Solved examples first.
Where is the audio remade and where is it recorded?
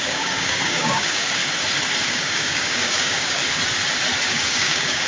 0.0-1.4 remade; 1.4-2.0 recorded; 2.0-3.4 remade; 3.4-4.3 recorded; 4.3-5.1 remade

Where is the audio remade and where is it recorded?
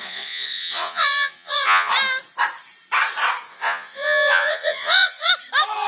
0.0-1.9 remade; 1.9-3.5 recorded; 3.5-5.3 remade; 5.3-5.9 recorded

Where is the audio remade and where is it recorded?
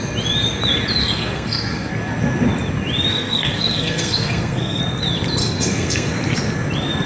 0.0-1.0 recorded; 1.0-1.9 remade; 1.9-3.1 recorded; 3.1-4.8 remade; 4.8-5.4 recorded; 5.4-6.1 remade; 6.1-7.1 recorded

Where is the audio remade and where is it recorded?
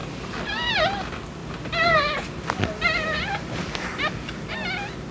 0.0-1.4 recorded; 1.4-3.5 remade; 3.5-5.1 recorded